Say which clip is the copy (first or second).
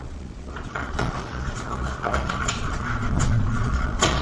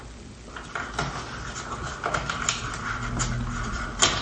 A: first